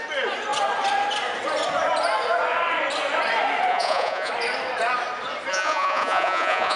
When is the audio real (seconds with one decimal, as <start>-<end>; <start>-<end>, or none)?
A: 0.0-3.7; 4.3-5.5